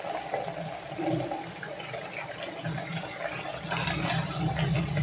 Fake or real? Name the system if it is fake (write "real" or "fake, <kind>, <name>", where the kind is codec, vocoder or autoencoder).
real